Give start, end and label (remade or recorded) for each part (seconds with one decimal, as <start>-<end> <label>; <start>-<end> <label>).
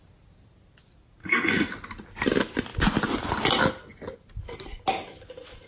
0.0-1.2 recorded; 1.2-1.7 remade; 1.7-5.7 recorded